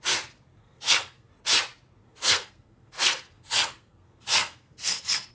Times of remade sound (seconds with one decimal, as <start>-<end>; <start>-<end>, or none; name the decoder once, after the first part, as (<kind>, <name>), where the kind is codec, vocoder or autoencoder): 0.6-1.3 (codec, SNAC); 2.0-5.3